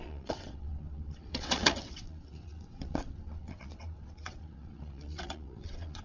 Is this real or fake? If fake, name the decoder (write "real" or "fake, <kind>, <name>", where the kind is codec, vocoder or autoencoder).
fake, vocoder, WaveNeXt